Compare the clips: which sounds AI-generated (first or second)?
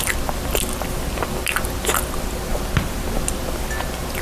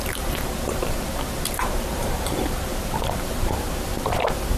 second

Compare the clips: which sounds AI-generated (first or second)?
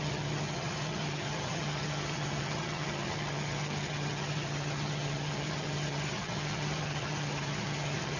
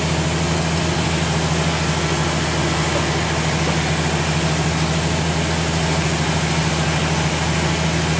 first